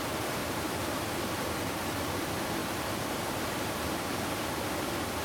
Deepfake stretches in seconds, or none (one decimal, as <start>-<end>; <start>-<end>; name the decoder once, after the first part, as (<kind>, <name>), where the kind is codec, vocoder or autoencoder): 0.4-2.2 (vocoder, BigVGAN v2); 2.6-3.7